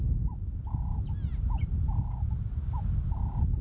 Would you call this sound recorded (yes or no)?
yes